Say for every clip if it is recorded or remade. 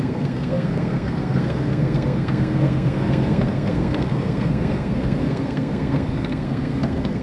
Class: remade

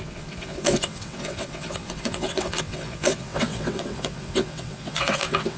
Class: remade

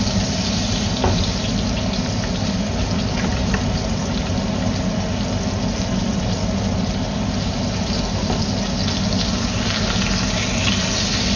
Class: recorded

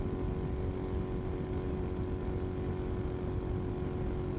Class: recorded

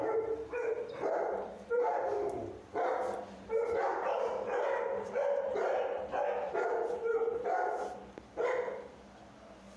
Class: remade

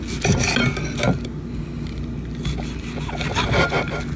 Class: recorded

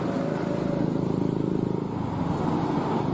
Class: recorded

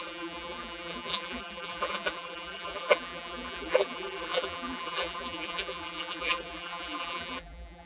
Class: remade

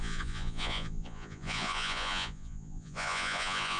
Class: remade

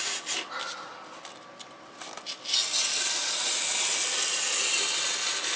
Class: recorded